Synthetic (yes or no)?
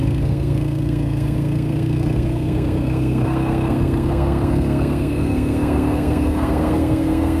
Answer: yes